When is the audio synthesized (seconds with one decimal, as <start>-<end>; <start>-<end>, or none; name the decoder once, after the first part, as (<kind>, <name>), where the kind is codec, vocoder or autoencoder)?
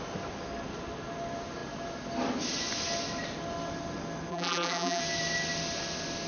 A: 4.3-5.0 (vocoder, BigVGAN v2)